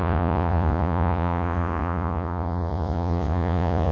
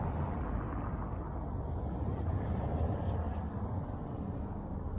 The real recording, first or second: second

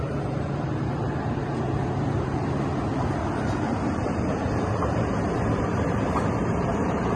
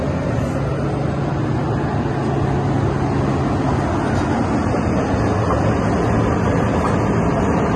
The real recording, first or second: second